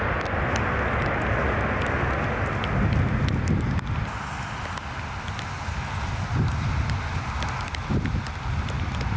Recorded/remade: recorded